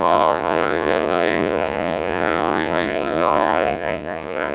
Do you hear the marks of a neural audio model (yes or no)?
yes